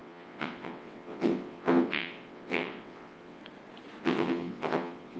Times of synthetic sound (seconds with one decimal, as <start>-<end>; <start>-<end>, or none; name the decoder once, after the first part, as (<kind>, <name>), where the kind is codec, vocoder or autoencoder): 0.0-3.4 (vocoder, WaveNeXt); 4.0-5.2

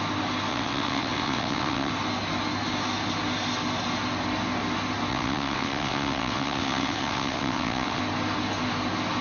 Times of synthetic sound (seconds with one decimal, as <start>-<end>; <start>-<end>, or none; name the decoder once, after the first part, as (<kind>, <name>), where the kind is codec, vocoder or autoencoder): 0.5-1.9 (vocoder, WaveNeXt); 5.1-8.0

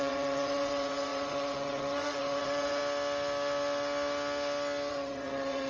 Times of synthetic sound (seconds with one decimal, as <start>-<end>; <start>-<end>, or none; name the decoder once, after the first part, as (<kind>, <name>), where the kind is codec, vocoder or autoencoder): 0.0-2.8 (vocoder, WaveNeXt); 4.9-5.7

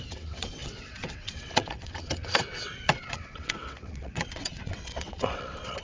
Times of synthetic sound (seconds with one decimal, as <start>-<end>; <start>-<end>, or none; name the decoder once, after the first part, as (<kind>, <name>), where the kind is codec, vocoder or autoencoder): 0.0-5.8 (vocoder, WaveNeXt)

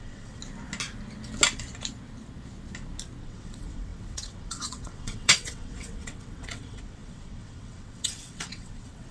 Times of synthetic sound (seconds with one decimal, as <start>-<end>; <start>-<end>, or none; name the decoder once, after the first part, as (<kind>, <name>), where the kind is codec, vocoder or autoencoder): 0.0-0.4 (vocoder, WaveNeXt); 3.2-9.1

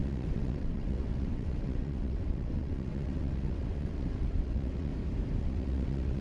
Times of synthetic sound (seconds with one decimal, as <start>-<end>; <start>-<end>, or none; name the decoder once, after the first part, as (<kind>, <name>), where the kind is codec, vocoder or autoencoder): 0.0-4.9 (vocoder, WaveNeXt); 5.4-6.2

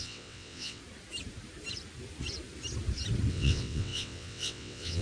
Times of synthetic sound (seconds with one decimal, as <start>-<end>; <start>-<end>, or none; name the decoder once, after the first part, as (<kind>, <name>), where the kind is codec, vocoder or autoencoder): 0.0-0.8 (vocoder, WaveNeXt); 3.3-5.0